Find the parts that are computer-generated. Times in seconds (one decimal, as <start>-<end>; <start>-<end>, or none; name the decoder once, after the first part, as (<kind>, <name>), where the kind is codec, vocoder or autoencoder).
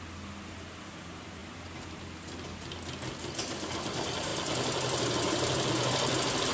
none